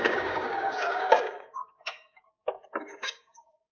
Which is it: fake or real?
fake